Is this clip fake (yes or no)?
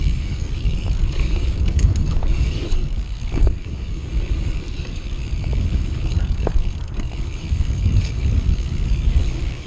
yes